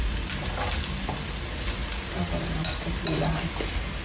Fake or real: real